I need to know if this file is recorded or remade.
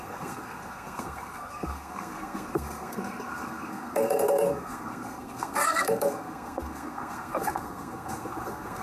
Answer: remade